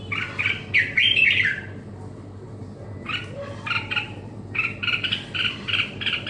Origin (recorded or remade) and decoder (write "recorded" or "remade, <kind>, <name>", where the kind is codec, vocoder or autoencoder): recorded